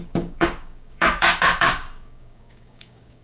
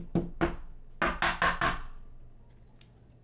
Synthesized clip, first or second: first